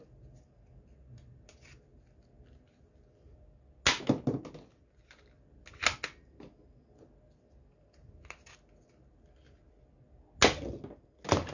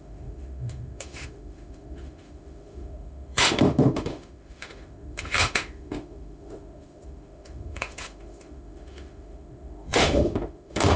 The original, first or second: first